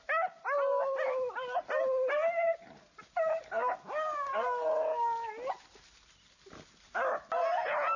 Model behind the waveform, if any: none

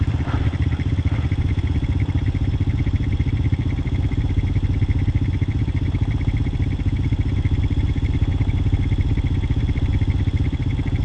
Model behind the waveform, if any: none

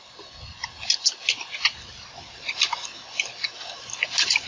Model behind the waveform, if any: none